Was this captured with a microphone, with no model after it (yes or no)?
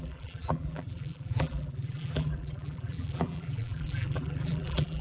no